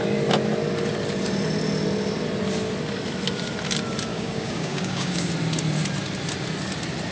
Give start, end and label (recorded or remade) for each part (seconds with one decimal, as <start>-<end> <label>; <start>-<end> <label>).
0.0-4.1 recorded; 4.1-5.3 remade; 5.3-7.1 recorded